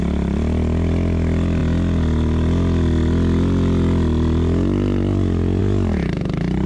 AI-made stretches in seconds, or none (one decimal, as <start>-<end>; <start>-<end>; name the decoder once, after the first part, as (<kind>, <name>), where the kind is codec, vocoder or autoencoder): none